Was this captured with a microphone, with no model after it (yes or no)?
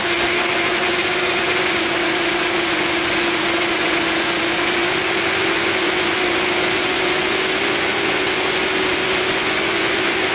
no